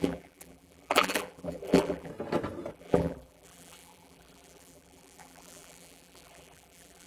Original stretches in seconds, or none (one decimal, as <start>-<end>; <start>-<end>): 2.1-2.7